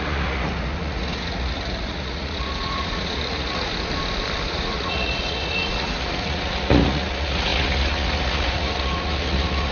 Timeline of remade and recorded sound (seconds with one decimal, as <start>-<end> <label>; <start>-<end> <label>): 0.0-3.7 remade; 3.7-4.5 recorded; 4.5-9.7 remade